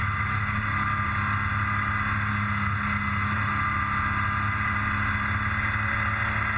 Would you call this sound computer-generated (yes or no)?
no